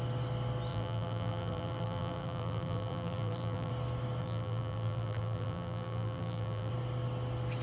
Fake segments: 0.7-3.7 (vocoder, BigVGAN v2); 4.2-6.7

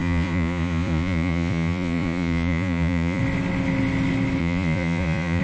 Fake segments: 0.0-3.2 (vocoder, Vocos); 4.4-5.4

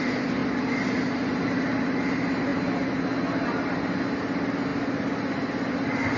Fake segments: none

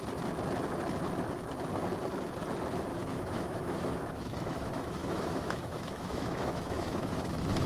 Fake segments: 2.9-7.7 (autoencoder, DAC-VAE)

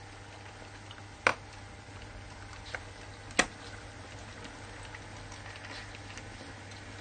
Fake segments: none

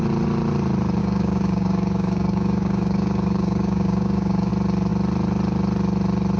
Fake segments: 1.0-4.5 (codec, DAC)

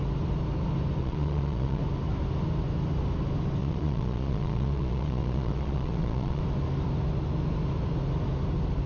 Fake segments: 1.0-1.8 (vocoder, Vocos); 3.6-6.4